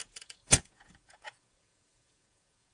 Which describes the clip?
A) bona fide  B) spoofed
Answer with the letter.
B